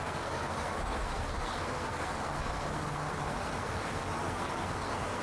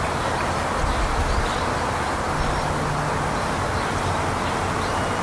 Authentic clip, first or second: second